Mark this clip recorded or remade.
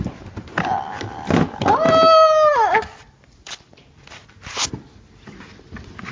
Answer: recorded